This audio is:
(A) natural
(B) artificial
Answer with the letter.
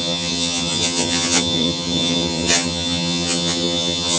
B